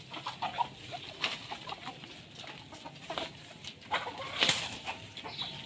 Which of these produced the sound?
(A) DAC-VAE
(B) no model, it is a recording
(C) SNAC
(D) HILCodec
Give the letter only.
B